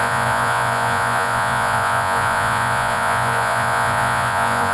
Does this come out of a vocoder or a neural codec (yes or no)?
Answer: yes